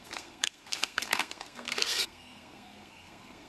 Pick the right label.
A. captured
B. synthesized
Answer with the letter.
B